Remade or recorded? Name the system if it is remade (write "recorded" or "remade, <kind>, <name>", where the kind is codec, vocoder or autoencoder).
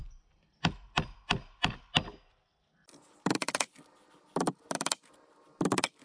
recorded